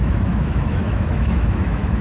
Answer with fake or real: fake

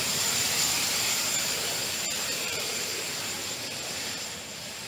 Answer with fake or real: fake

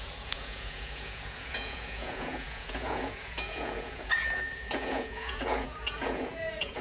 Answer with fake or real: fake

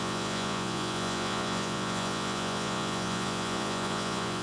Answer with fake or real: fake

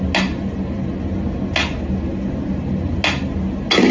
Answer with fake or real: real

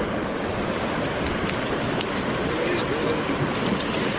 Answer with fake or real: real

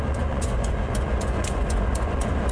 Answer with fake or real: fake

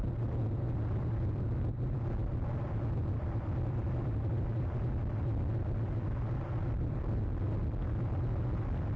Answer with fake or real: real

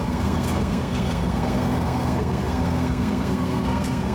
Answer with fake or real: fake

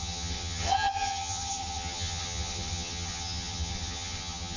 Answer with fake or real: fake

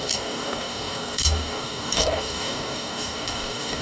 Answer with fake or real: fake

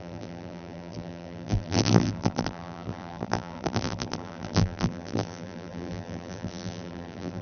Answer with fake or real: fake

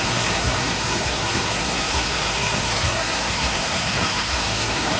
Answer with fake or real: fake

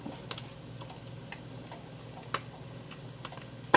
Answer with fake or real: real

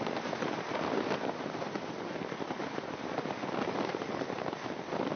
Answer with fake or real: real